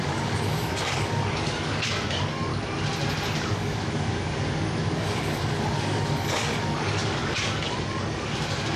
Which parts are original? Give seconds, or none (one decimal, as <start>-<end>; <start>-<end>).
2.5-3.4